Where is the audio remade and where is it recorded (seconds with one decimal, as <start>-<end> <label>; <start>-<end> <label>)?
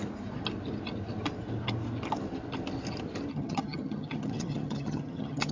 0.0-3.3 recorded; 3.3-5.5 remade